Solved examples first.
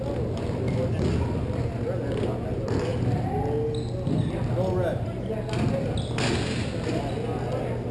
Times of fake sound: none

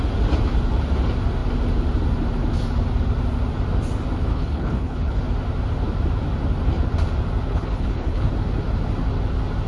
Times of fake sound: 4.3-5.2 (codec, HILCodec); 7.5-8.3

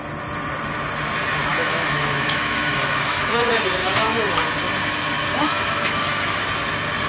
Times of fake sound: 1.5-3.4 (autoencoder, DAC-VAE); 3.8-4.3; 5.3-6.4

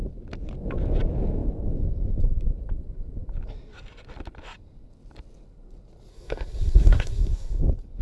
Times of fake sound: 6.1-7.6 (codec, SNAC)